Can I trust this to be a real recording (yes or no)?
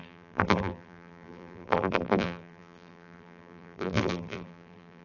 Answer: no